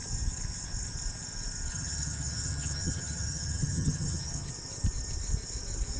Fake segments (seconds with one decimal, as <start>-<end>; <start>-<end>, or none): 1.7-4.5